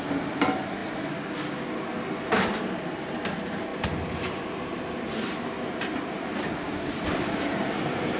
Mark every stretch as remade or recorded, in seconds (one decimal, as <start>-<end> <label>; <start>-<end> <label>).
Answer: 0.0-8.2 recorded